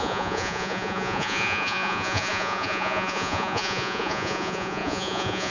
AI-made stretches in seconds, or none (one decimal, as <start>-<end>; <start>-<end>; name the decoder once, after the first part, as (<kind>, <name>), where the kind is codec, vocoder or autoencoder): 0.0-5.5 (vocoder, Vocos)